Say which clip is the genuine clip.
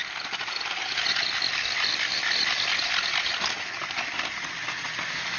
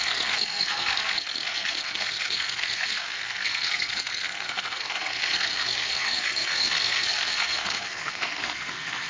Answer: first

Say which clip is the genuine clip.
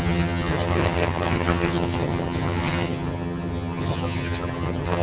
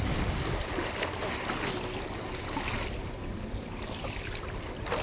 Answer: second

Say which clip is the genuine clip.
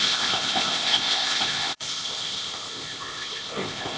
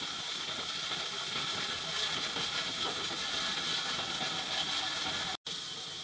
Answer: second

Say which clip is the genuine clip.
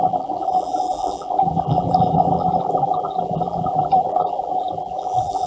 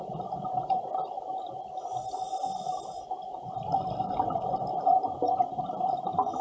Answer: second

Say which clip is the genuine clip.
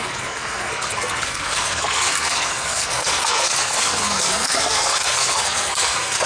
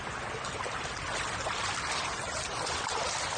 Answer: second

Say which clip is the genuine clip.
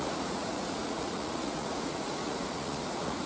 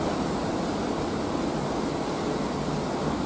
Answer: second